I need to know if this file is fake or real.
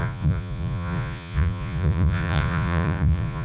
fake